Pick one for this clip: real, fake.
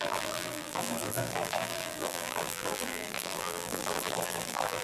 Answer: fake